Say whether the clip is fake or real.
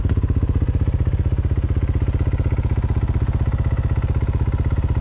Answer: real